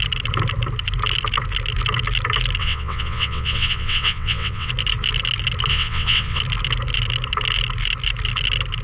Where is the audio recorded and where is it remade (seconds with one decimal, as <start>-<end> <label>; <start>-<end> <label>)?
0.0-2.6 recorded; 2.6-4.7 remade; 4.7-5.7 recorded; 5.7-6.4 remade; 6.4-8.8 recorded